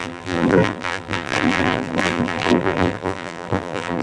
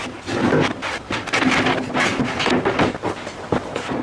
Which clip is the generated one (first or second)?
first